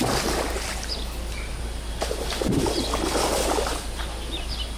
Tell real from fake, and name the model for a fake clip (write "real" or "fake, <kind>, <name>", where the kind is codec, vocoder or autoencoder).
real